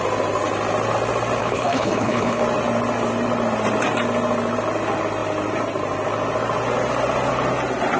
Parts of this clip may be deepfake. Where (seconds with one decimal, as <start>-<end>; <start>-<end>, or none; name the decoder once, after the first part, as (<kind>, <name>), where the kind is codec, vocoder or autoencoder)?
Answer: 1.4-2.4 (codec, HILCodec)